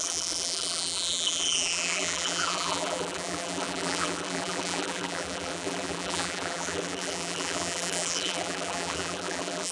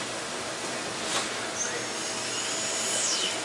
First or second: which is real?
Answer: second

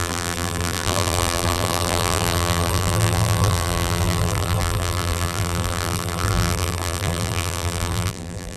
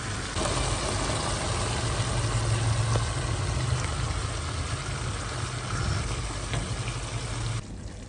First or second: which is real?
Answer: second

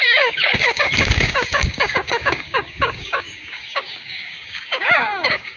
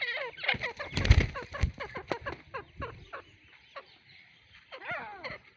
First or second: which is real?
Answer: second